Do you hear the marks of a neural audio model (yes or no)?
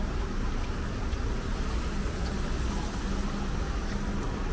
no